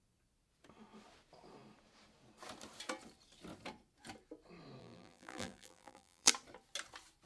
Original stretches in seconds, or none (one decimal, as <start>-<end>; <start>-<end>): 0.0-4.8; 6.3-7.3